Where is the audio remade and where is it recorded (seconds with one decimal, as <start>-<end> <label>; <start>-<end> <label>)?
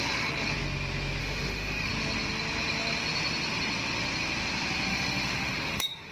0.0-1.2 recorded; 1.2-1.9 remade; 1.9-4.9 recorded; 4.9-6.1 remade